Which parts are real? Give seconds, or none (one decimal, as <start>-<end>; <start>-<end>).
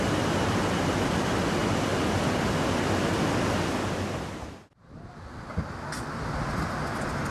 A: 0.0-7.3